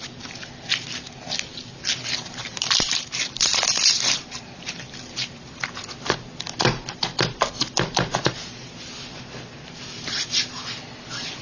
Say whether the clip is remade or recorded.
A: recorded